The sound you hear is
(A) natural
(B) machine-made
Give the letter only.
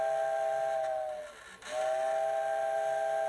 A